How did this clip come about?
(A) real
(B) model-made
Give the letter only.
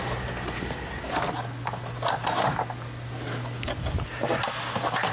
A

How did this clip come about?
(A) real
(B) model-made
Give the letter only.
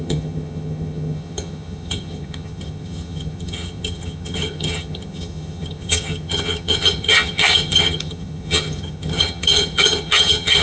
B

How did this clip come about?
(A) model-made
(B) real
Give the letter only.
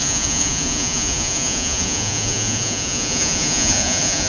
A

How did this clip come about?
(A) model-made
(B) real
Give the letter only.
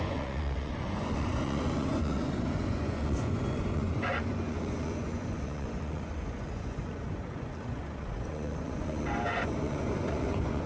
A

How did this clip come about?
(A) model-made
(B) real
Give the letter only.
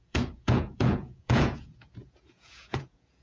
A